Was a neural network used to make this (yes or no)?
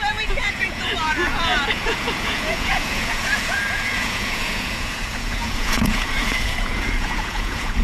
yes